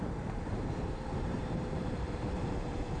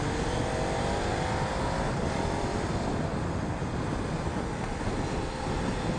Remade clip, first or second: first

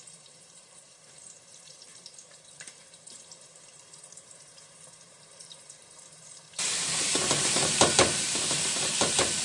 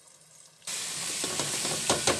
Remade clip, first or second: first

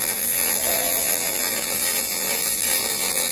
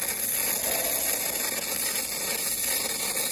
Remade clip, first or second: first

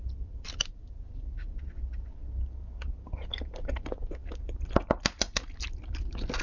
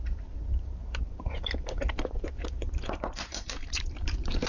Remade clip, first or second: second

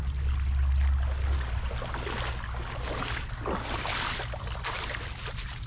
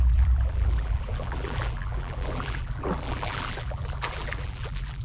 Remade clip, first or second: second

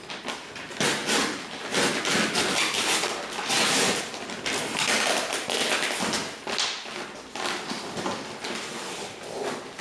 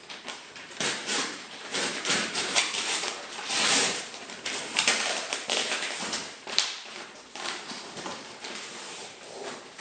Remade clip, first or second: second